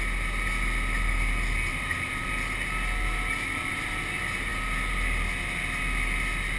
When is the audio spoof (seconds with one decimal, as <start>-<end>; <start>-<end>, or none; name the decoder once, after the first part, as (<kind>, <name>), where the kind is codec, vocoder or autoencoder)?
1.7-2.3 (vocoder, BigVGAN v2)